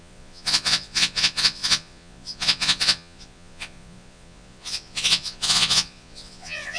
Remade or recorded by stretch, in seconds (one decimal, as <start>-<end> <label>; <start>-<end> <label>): 0.0-6.8 remade